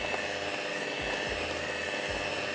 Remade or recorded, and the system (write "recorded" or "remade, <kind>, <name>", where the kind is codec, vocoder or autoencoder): recorded